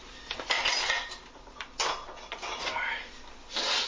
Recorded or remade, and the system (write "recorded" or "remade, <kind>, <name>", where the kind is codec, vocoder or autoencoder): recorded